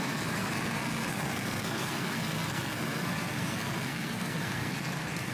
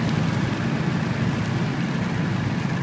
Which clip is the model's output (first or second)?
first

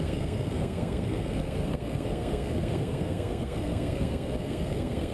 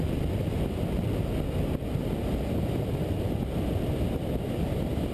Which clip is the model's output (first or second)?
first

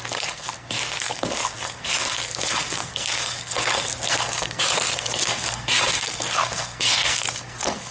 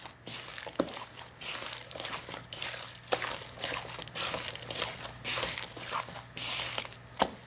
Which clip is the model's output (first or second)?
first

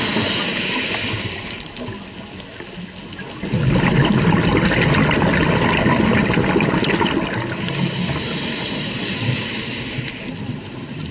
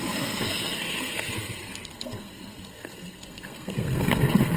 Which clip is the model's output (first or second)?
second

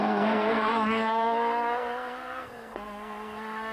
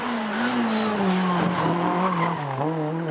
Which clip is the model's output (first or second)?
first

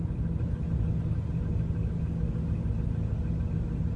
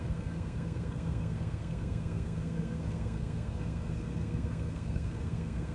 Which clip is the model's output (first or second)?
second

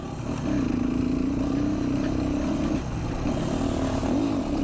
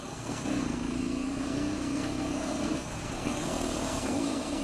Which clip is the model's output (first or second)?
second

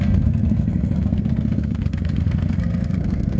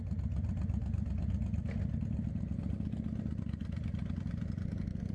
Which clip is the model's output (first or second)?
first